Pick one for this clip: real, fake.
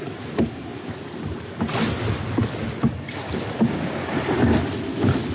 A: real